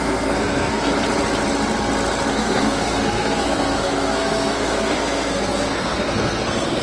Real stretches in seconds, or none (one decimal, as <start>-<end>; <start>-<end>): 0.9-2.3